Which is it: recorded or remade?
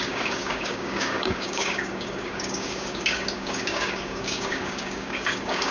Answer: remade